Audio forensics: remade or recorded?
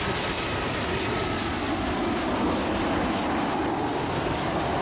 recorded